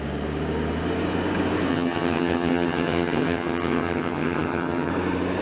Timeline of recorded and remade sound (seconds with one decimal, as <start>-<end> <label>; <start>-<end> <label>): 0.0-1.7 recorded; 1.7-4.9 remade; 4.9-5.4 recorded